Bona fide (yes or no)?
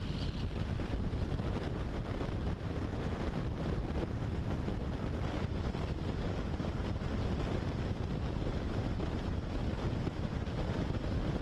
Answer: yes